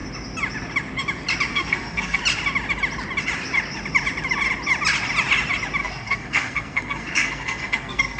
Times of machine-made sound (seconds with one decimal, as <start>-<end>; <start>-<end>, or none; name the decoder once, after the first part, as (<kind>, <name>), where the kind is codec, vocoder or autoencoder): 1.5-2.2 (codec, SNAC); 5.8-8.2